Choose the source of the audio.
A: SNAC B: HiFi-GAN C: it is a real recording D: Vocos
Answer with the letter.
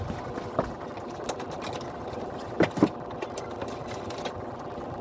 C